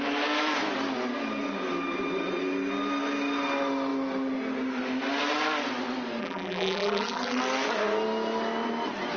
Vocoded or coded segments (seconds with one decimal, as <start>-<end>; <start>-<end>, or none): 6.2-7.4